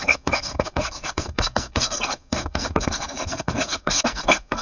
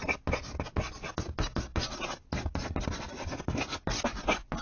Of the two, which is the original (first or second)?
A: second